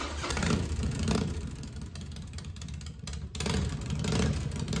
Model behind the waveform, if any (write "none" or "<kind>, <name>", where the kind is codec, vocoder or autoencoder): none